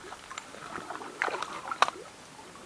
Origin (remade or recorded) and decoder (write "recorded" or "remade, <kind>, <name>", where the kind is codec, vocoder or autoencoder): recorded